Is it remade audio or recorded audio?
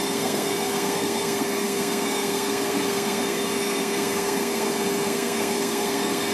remade